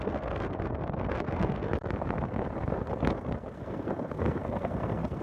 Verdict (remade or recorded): remade